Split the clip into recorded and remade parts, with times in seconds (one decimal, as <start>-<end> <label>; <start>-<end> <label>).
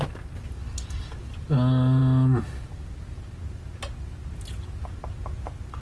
0.0-5.8 recorded